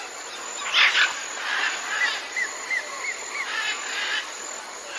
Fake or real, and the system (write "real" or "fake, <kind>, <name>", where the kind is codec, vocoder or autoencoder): real